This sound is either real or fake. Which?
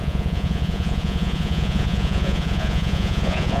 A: fake